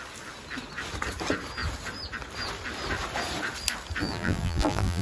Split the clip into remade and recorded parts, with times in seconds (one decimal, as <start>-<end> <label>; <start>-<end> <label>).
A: 0.0-4.0 recorded; 4.0-5.0 remade